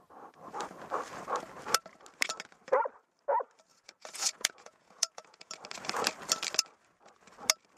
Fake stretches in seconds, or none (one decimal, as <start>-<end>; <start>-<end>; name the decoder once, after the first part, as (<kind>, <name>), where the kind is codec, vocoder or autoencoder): 3.7-5.5 (vocoder, Vocos)